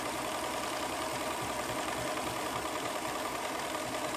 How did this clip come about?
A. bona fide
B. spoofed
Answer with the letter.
B